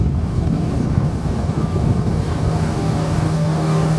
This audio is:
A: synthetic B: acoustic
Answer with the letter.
A